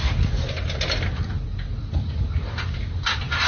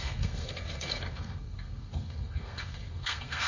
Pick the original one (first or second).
first